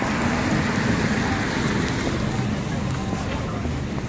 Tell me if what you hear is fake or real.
real